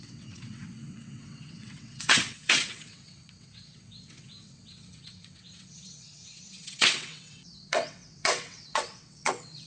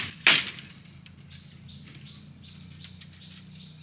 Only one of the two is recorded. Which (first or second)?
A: second